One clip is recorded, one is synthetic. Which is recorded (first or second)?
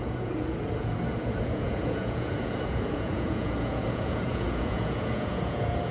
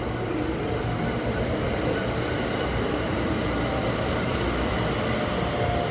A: second